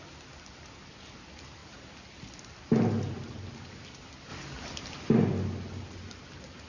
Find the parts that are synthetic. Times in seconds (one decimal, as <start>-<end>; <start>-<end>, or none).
none